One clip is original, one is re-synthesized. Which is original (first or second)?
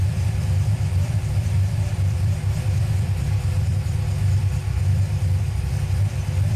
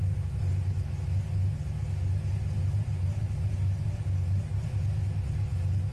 second